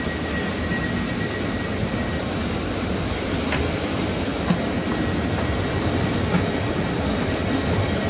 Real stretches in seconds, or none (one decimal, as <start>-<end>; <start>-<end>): 0.0-8.1